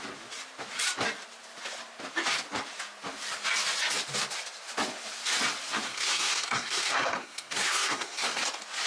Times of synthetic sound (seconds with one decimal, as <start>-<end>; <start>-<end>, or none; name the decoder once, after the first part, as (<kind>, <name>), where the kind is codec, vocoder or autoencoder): 5.9-8.4 (codec, SNAC)